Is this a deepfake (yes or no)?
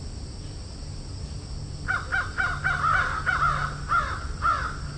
no